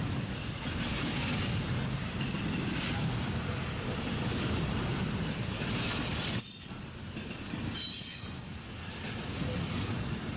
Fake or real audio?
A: real